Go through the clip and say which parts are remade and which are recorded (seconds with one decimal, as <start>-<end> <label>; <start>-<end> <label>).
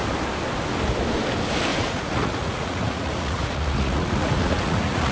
0.0-1.7 recorded; 1.7-5.1 remade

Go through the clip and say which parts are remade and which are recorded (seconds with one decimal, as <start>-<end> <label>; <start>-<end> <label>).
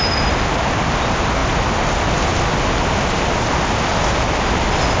0.0-5.0 recorded